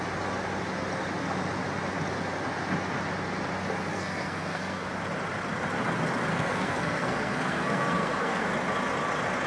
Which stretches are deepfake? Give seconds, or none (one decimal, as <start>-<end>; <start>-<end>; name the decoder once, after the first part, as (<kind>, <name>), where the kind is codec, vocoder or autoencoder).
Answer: 3.9-4.9 (codec, SNAC); 6.3-8.5